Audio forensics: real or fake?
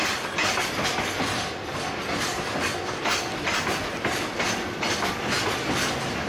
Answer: real